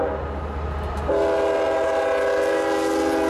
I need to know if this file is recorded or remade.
recorded